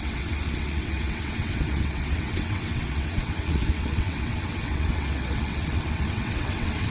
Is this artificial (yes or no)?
yes